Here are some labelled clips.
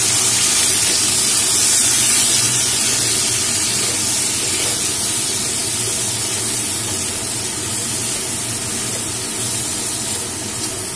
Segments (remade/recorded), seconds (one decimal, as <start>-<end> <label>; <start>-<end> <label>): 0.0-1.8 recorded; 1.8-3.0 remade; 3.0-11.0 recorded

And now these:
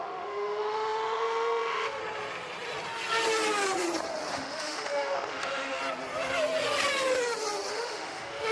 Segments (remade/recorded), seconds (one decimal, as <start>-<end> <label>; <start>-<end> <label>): 0.0-2.0 remade; 2.0-4.3 recorded; 4.3-5.8 remade; 5.8-7.7 recorded; 7.7-8.5 remade

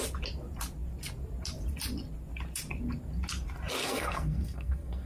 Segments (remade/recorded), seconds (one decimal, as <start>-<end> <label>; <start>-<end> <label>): 0.0-3.8 recorded; 3.8-5.1 remade

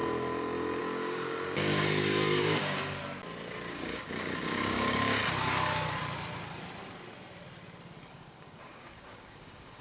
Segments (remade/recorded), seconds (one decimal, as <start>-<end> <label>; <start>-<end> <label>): 0.0-0.8 recorded; 0.8-3.0 remade; 3.0-3.7 recorded; 3.7-5.2 remade; 5.2-8.1 recorded; 8.1-9.8 remade